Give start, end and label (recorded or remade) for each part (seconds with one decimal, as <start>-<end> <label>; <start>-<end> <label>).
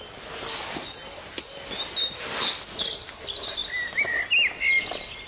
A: 0.0-5.3 recorded